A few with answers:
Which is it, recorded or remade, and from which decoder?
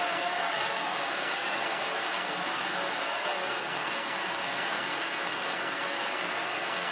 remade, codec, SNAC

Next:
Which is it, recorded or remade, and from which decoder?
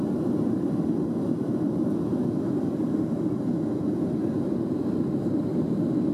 recorded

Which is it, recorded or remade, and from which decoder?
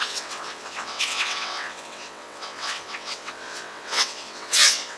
remade, vocoder, WaveNeXt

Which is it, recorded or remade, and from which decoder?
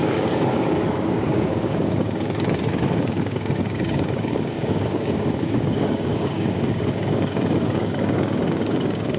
remade, codec, DAC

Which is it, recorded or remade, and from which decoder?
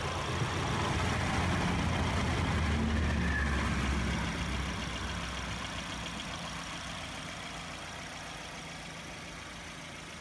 recorded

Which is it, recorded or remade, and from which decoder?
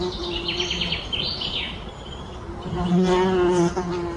recorded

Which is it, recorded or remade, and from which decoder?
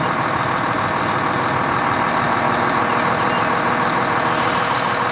recorded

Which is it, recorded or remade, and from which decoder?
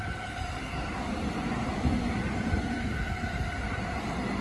recorded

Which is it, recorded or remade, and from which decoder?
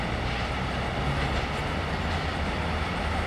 recorded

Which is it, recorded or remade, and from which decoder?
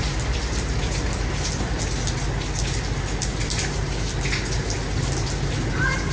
recorded